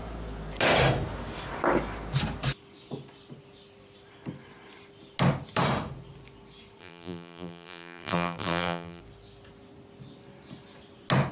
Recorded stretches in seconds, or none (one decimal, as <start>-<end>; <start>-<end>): 0.0-6.8; 9.0-11.3